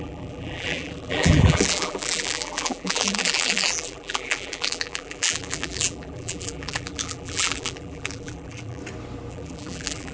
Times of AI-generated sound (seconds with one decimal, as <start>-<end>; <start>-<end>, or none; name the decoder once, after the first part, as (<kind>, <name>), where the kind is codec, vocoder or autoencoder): 0.0-8.8 (vocoder, BigVGAN v2); 9.3-10.1